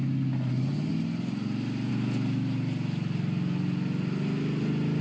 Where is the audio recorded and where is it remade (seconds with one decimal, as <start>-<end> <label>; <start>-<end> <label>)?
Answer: 0.0-5.0 recorded